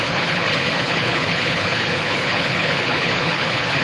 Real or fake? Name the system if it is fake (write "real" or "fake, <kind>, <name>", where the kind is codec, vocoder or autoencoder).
fake, codec, HILCodec